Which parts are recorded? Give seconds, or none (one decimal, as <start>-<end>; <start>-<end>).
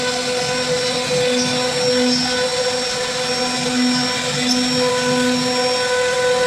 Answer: 0.0-6.5